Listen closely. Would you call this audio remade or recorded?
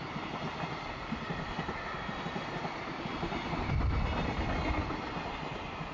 recorded